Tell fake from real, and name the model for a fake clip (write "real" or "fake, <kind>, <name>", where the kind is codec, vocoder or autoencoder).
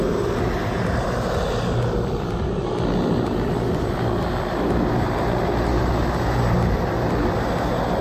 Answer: real